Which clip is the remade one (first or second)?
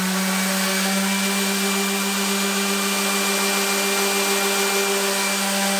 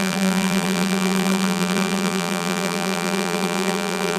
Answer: second